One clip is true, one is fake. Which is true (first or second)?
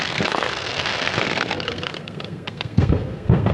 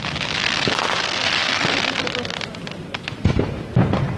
second